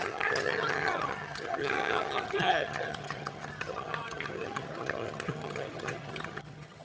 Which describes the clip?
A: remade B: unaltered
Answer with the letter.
A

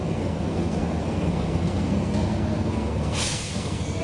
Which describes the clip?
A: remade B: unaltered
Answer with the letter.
A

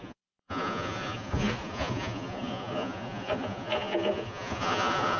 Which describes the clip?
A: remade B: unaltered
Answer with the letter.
A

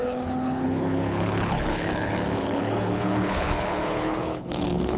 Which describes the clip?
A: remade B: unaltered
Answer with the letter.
A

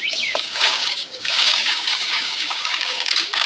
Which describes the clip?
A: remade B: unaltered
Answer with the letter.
A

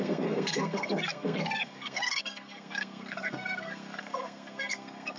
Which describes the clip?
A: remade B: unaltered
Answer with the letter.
A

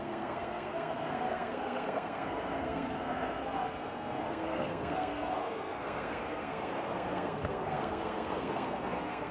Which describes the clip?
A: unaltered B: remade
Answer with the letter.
B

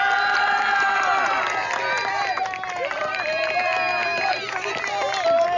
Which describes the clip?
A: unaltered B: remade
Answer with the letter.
A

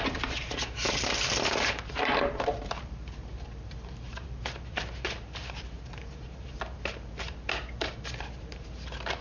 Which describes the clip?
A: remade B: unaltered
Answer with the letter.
A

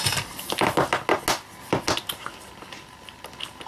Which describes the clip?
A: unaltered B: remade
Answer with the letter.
A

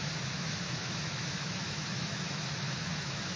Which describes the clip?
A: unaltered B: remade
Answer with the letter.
B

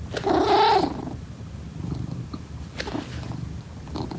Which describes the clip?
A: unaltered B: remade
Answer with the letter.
A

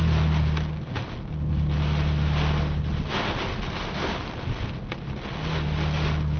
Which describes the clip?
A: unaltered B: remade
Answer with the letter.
A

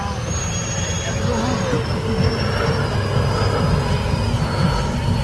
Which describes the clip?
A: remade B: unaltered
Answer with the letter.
B